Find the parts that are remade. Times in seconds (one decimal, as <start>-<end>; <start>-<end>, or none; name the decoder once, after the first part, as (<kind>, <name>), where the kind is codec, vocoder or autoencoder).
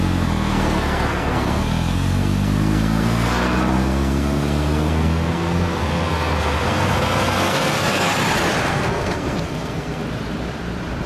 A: 0.0-8.1 (codec, SNAC); 8.7-10.0